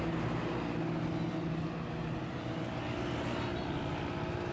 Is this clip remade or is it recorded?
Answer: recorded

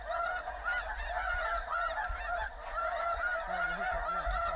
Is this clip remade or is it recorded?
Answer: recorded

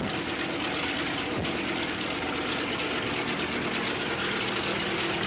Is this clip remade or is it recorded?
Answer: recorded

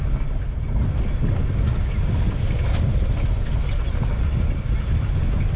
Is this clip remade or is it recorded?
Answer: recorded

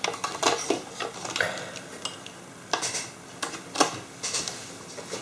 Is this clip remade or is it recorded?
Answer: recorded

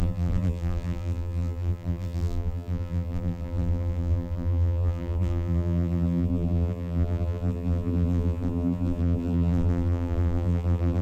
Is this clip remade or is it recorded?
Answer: remade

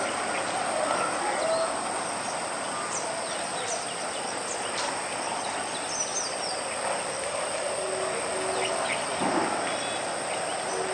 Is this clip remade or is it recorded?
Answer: recorded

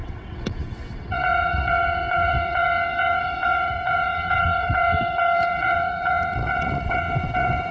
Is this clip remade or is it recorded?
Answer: remade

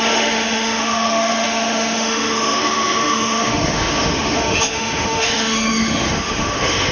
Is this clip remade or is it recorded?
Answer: remade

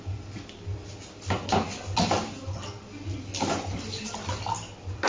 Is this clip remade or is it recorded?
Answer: recorded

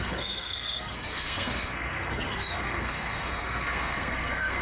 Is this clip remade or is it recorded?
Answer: remade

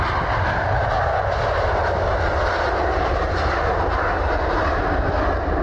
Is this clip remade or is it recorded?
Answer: recorded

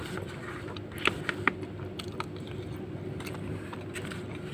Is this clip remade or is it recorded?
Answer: recorded